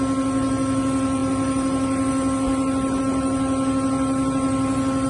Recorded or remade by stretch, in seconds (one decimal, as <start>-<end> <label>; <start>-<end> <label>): 0.0-5.1 recorded